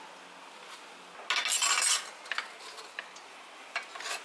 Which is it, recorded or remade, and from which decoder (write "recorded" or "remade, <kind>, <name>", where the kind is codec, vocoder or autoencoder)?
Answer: recorded